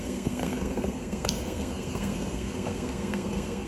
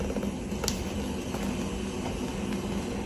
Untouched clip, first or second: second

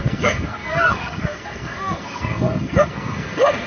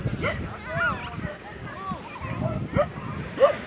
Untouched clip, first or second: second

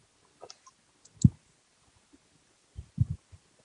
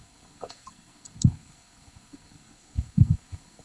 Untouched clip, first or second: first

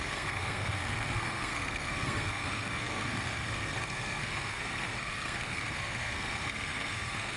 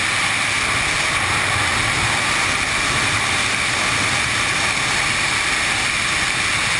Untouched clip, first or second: second